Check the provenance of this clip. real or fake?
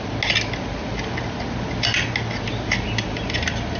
real